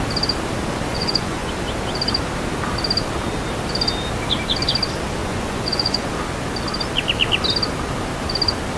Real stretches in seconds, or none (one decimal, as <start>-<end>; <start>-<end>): 0.0-0.9; 1.5-5.2; 6.1-8.8